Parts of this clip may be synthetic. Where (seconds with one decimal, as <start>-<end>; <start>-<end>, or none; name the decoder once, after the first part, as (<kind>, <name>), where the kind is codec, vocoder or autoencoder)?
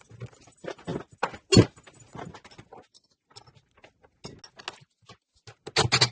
none